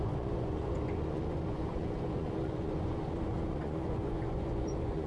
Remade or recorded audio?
remade